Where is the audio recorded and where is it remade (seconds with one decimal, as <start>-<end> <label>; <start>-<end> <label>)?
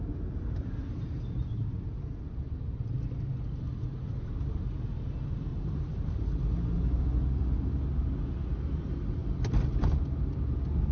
0.0-5.5 recorded; 5.5-6.5 remade; 6.5-10.9 recorded